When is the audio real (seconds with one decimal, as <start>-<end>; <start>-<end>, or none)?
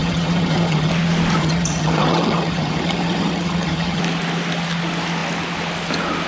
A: 0.9-1.4; 4.0-6.3